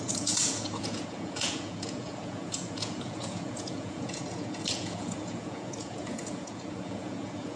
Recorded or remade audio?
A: remade